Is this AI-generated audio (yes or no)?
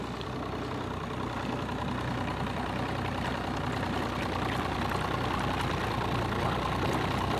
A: no